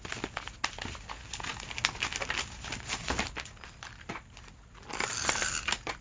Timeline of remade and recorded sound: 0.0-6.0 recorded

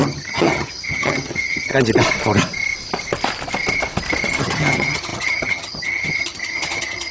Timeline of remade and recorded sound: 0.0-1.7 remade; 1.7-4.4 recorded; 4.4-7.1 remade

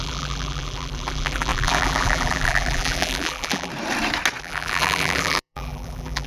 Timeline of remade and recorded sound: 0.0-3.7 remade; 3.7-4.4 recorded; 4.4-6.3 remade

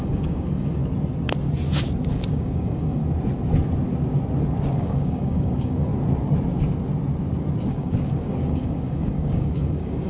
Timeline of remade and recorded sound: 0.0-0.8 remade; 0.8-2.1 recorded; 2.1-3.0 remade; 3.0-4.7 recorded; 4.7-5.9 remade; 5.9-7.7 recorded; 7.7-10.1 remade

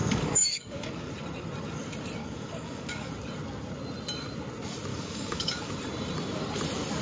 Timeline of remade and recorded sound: 0.0-1.1 remade; 1.1-2.2 recorded; 2.2-3.1 remade; 3.1-4.9 recorded; 4.9-5.7 remade; 5.7-7.0 recorded

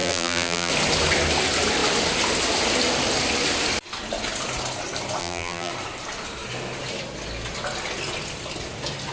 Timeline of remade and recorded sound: 0.0-0.7 remade; 0.7-5.2 recorded; 5.2-5.7 remade; 5.7-9.1 recorded

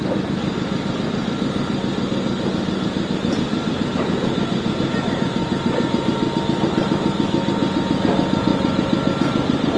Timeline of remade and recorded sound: 0.0-3.5 recorded; 3.5-5.0 remade; 5.0-5.4 recorded; 5.4-6.4 remade; 6.4-9.8 recorded

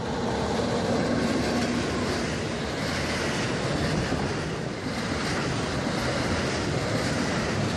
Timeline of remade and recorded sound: 0.0-7.8 recorded